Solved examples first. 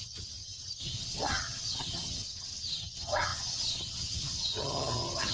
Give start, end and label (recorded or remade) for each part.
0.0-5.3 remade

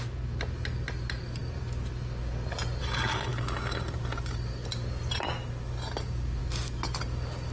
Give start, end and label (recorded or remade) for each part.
0.0-7.5 recorded

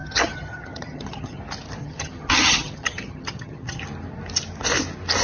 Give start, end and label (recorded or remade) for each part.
0.0-1.4 remade; 1.4-1.8 recorded; 1.8-3.8 remade; 3.8-5.2 recorded

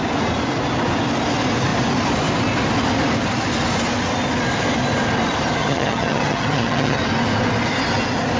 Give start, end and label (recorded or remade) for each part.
0.0-5.6 recorded; 5.6-7.0 remade; 7.0-8.4 recorded